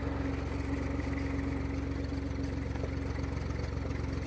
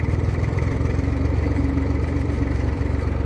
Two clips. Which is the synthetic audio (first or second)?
second